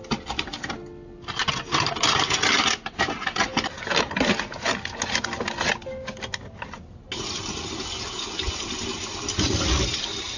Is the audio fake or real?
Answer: real